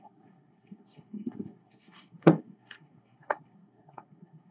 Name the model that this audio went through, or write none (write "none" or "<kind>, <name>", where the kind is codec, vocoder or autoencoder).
codec, SNAC